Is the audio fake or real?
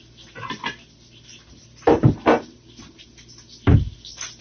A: real